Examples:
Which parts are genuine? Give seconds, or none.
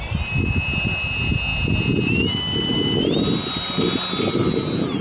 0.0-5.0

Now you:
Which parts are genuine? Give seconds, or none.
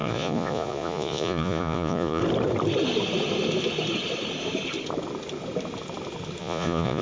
2.2-6.4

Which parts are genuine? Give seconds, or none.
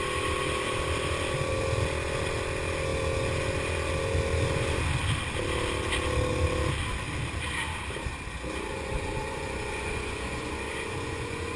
0.0-8.7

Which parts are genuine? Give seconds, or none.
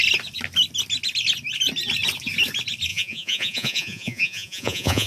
0.0-2.9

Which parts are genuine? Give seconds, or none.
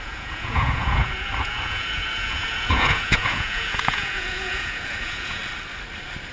5.4-6.3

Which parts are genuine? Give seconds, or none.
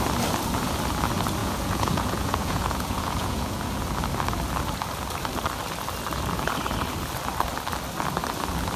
0.0-1.4; 3.7-8.8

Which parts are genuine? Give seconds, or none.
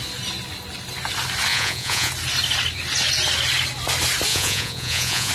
0.0-1.5; 2.1-4.3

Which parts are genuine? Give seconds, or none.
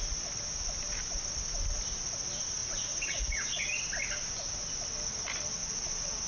0.0-2.6; 3.6-5.6